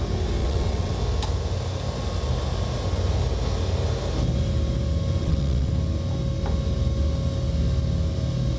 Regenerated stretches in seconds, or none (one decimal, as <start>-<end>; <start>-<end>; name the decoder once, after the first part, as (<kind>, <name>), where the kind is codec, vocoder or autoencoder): 0.4-0.9 (vocoder, WaveNeXt); 5.2-5.7